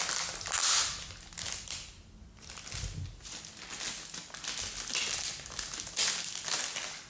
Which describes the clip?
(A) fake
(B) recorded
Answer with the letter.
B